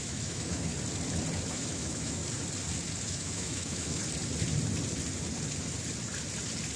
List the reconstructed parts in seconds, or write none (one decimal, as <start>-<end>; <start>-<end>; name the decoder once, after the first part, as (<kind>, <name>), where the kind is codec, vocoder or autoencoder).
0.0-0.7 (autoencoder, DAC-VAE); 1.5-2.2; 3.0-4.0